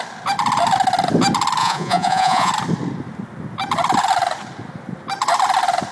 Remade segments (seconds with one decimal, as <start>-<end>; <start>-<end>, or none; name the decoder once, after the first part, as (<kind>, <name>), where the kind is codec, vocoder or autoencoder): 1.6-2.5 (vocoder, Vocos)